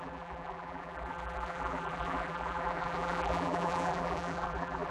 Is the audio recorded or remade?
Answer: remade